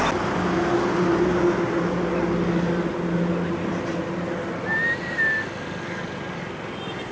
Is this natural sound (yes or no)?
yes